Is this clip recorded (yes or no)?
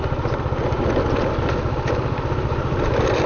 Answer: no